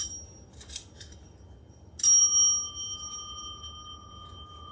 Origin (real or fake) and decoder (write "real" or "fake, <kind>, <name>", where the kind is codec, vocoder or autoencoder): real